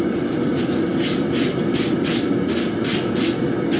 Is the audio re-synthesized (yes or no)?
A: no